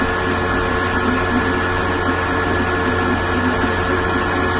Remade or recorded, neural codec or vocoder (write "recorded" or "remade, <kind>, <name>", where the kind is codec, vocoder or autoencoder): recorded